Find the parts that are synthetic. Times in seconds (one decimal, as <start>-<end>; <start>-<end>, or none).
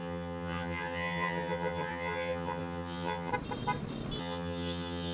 0.0-3.3; 4.2-5.1